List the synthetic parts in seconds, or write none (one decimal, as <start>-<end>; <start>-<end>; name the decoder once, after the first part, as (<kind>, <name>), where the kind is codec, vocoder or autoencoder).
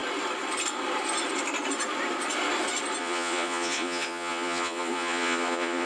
3.0-5.9 (vocoder, Vocos)